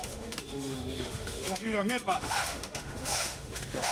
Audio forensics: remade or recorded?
remade